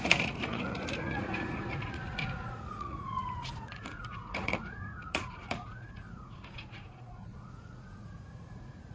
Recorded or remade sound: remade